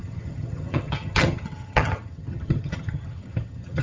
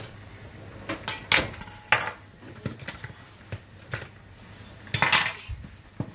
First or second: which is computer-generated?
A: first